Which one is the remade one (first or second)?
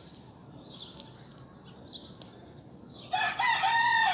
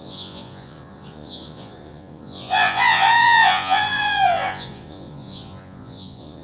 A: second